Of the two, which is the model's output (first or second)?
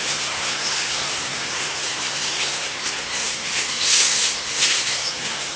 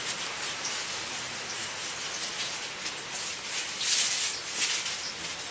first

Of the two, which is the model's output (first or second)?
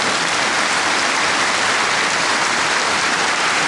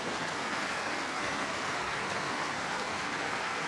second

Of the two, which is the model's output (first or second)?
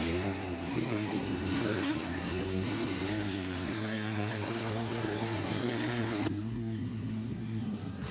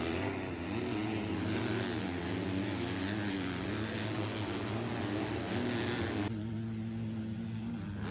first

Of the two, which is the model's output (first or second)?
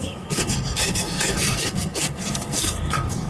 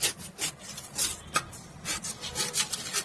first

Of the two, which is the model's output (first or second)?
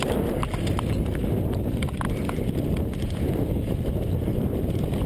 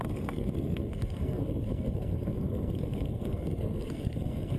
second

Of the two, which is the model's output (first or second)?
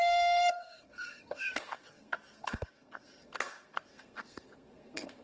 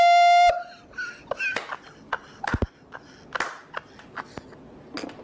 first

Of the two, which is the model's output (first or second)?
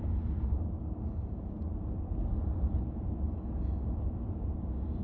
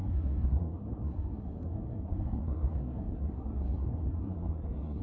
second